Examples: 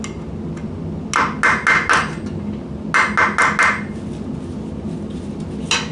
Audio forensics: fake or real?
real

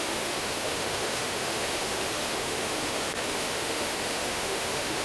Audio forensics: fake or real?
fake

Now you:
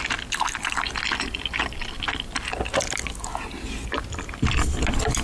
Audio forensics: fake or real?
real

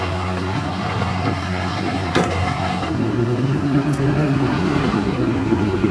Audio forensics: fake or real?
fake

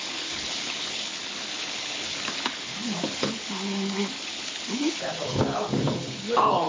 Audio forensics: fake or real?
fake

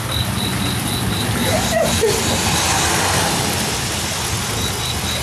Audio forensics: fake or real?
real